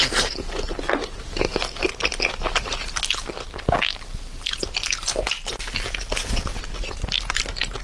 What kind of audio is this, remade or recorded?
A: recorded